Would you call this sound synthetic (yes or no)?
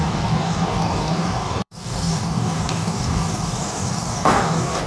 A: yes